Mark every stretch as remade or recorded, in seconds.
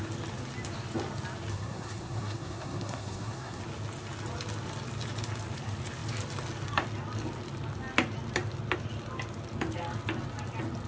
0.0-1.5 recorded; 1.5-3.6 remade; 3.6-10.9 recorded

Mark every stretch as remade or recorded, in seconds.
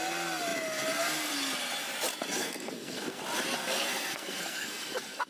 0.0-2.4 recorded; 2.4-3.2 remade; 3.2-3.6 recorded; 3.6-5.3 remade